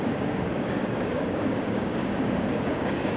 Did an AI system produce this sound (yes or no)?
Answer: yes